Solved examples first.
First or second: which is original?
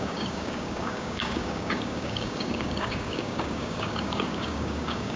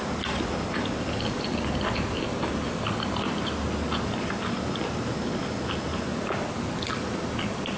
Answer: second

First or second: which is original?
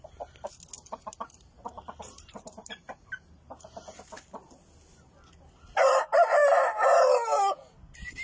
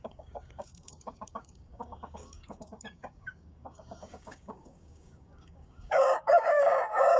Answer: first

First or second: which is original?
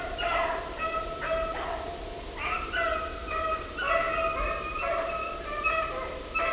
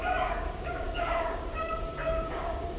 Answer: first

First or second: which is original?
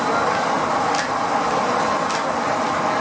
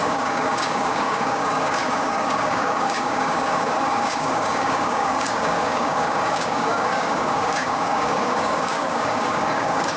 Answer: first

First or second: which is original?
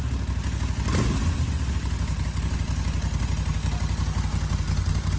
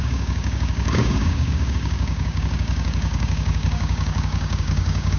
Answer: first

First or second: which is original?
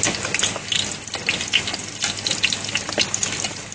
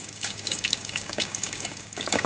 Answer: first